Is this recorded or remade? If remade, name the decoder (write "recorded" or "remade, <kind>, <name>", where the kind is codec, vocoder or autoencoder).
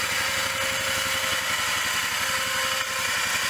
recorded